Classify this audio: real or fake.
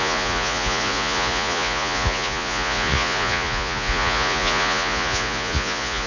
fake